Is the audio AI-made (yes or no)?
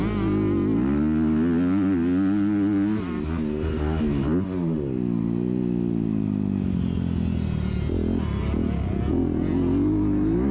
no